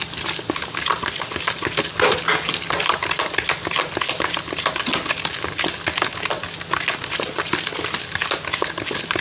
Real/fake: real